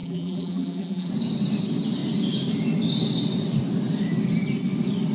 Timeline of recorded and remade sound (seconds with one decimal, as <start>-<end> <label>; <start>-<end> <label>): 0.0-1.1 remade; 1.1-5.1 recorded